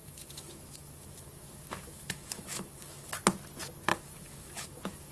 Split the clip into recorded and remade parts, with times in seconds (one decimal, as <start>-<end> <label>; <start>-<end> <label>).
0.0-3.1 remade; 3.1-3.9 recorded; 3.9-5.1 remade